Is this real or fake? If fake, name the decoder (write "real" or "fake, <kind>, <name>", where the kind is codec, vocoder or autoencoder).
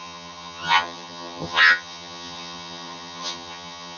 fake, vocoder, HiFi-GAN